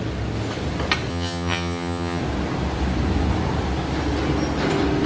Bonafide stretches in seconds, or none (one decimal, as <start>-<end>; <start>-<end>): 0.0-1.1; 2.2-5.1